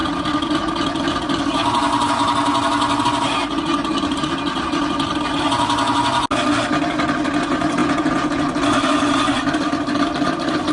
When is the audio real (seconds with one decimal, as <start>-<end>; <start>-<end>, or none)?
0.0-7.8; 8.4-10.7